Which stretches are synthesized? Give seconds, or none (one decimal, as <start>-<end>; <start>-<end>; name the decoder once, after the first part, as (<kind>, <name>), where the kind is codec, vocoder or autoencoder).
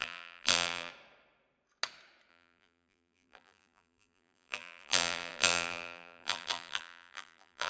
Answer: 0.0-0.9 (vocoder, BigVGAN v2); 2.3-7.7